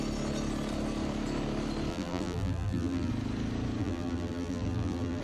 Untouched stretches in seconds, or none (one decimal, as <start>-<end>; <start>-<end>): 0.0-1.9; 3.1-3.8

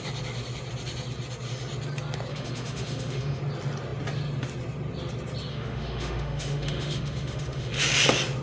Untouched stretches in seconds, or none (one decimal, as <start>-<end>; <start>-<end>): 0.0-2.3; 3.4-5.5; 7.9-8.4

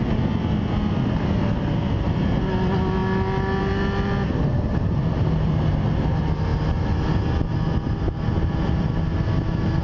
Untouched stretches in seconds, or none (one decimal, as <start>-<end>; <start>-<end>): 0.0-9.8

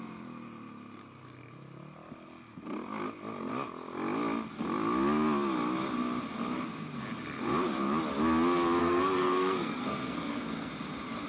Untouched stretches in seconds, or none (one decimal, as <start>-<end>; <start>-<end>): 0.0-8.8; 10.7-11.3

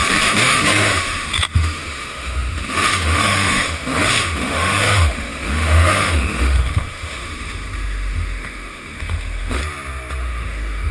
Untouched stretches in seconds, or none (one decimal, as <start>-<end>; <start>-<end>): 9.6-10.2

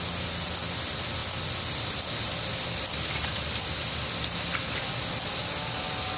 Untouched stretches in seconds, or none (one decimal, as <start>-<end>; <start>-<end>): 0.0-6.2